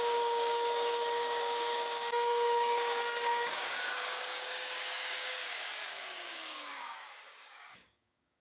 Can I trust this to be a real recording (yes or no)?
no